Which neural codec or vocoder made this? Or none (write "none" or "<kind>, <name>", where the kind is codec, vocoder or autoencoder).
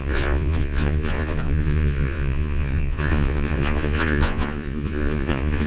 vocoder, Vocos